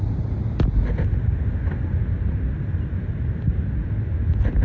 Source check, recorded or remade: recorded